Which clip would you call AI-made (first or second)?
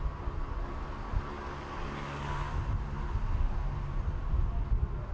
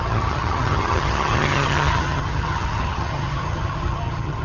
second